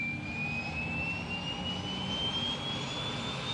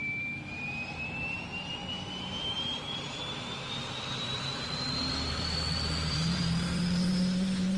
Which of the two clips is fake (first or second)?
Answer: second